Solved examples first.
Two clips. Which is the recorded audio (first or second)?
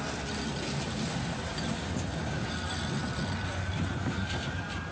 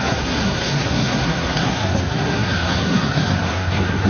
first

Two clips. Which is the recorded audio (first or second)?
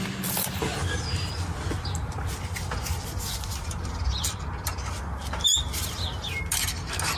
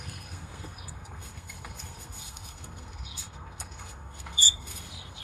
first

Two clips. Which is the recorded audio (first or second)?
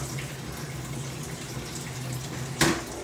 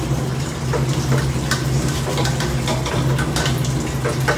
second